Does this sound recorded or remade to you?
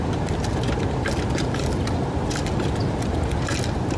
recorded